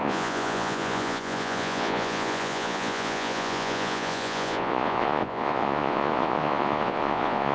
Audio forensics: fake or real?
fake